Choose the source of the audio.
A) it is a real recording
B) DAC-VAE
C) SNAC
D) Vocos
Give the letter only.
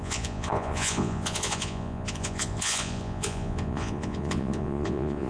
D